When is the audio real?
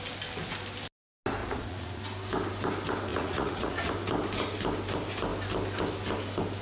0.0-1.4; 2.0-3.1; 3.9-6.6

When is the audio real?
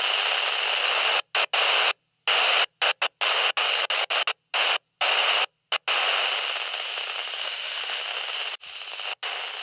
0.0-7.4; 8.0-9.6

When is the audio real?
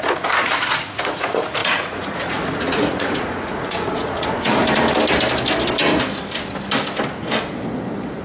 4.6-8.2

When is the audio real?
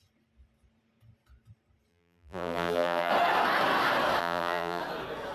0.0-1.9; 3.1-4.2; 4.8-5.3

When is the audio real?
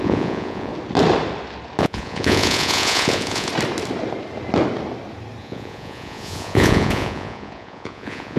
0.7-1.8; 3.5-5.4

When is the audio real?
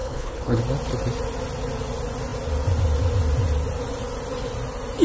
0.6-5.0